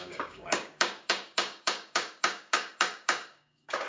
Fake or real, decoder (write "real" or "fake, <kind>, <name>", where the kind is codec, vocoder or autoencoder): fake, codec, DAC